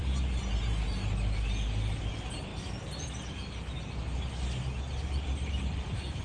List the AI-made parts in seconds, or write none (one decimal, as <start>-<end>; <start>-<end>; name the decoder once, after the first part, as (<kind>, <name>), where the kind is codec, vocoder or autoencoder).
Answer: none